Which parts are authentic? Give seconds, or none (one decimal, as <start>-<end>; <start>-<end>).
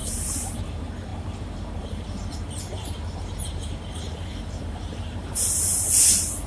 none